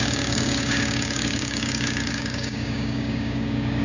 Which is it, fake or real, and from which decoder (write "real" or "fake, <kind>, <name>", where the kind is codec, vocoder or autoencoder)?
fake, codec, DAC